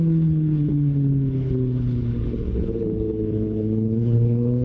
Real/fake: fake